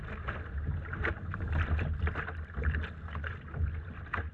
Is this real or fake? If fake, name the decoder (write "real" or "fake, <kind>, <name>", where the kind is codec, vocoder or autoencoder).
real